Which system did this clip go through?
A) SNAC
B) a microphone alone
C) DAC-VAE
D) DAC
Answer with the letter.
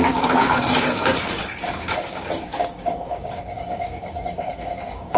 D